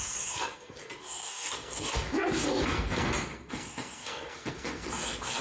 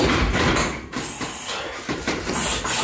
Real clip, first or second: second